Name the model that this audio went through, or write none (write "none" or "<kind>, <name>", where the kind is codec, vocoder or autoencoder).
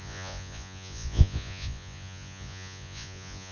vocoder, Vocos